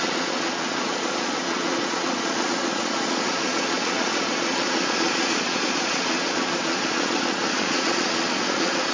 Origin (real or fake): fake